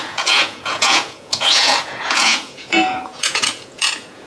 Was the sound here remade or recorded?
remade